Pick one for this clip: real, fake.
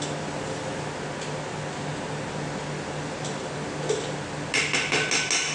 real